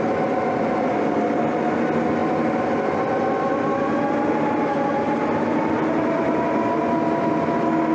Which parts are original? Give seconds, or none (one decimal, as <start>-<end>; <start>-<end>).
0.0-7.9